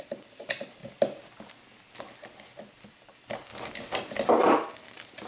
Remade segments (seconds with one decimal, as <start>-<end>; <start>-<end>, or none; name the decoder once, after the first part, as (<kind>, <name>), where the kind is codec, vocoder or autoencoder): 0.0-0.8 (vocoder, BigVGAN v2); 2.9-3.5; 4.3-5.3